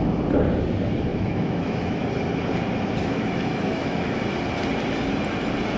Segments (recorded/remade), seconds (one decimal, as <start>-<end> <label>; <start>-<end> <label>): 0.0-1.1 recorded; 1.1-2.1 remade; 2.1-3.0 recorded; 3.0-4.2 remade; 4.2-5.8 recorded

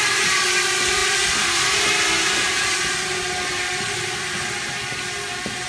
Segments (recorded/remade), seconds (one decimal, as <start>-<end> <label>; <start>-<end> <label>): 0.0-5.7 recorded

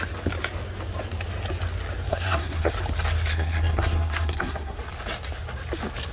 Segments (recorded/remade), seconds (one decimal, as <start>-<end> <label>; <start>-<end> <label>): 0.0-2.1 recorded; 2.1-2.7 remade; 2.7-3.3 recorded; 3.3-4.8 remade; 4.8-6.1 recorded

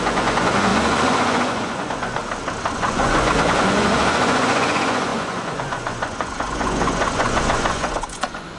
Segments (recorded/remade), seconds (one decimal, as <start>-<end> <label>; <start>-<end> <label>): 0.0-2.2 remade; 2.2-2.7 recorded; 2.7-8.6 remade

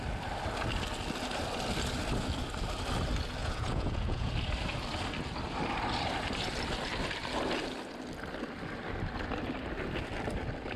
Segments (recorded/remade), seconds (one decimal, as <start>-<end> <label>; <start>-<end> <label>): 0.0-3.4 recorded; 3.4-4.3 remade; 4.3-10.8 recorded

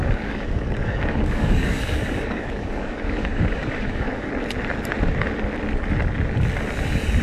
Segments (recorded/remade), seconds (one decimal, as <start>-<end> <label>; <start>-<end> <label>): 0.0-4.3 remade; 4.3-7.2 recorded

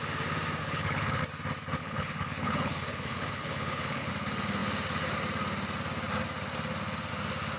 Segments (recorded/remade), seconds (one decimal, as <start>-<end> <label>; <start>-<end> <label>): 0.0-0.6 recorded; 0.6-1.2 remade; 1.2-1.8 recorded; 1.8-4.1 remade; 4.1-7.6 recorded